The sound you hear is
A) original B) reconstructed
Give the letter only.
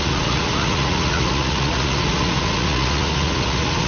B